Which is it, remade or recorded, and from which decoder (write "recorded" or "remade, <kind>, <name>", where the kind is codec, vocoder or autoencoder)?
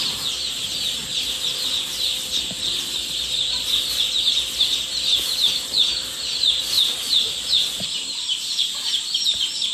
recorded